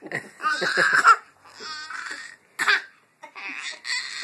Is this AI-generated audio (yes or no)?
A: no